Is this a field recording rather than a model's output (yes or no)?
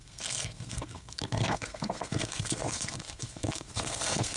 no